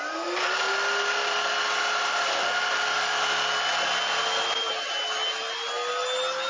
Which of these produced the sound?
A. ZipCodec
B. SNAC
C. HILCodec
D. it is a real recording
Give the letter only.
D